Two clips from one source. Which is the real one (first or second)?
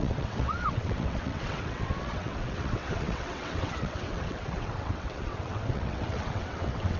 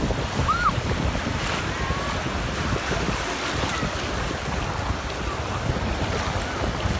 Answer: second